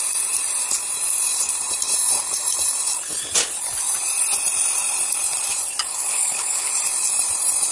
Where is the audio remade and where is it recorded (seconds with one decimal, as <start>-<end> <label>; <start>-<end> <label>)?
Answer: 0.0-5.9 recorded; 5.9-6.7 remade; 6.7-7.7 recorded